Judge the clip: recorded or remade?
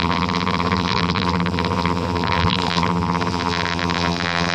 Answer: remade